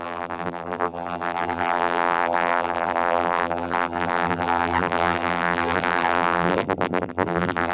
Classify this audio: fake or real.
fake